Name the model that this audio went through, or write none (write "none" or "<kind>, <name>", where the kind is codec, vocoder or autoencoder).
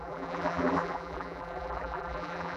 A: vocoder, BigVGAN v2